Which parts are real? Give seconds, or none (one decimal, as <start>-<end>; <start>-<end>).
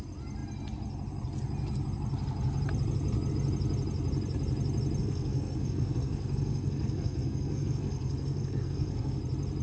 0.0-5.0; 9.2-9.6